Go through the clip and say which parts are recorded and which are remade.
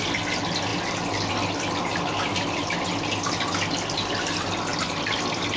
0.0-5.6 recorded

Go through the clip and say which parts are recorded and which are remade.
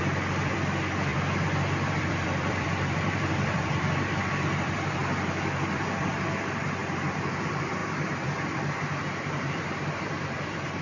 0.0-5.0 remade; 5.0-5.7 recorded; 5.7-6.8 remade; 6.8-7.3 recorded; 7.3-10.8 remade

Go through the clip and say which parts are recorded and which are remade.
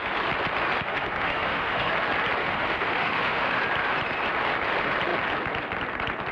0.0-0.9 recorded; 0.9-1.9 remade; 1.9-2.4 recorded; 2.4-3.6 remade; 3.6-6.3 recorded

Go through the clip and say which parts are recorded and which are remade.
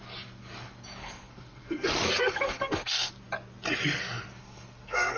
0.0-1.0 recorded; 1.0-3.1 remade; 3.1-4.4 recorded; 4.4-5.2 remade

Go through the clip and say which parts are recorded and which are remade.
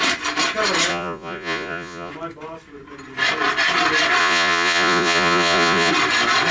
0.0-0.9 recorded; 0.9-2.1 remade; 2.1-4.2 recorded; 4.2-5.9 remade; 5.9-6.5 recorded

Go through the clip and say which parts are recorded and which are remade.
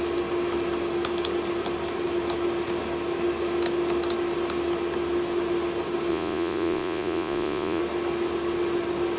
0.0-6.1 recorded; 6.1-7.8 remade; 7.8-9.2 recorded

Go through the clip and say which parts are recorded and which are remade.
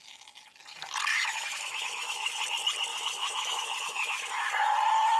0.0-1.1 recorded; 1.1-2.4 remade; 2.4-2.9 recorded; 2.9-4.5 remade; 4.5-5.2 recorded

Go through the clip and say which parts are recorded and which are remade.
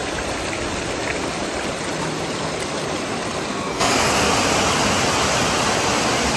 0.0-3.5 recorded; 3.5-4.3 remade; 4.3-6.4 recorded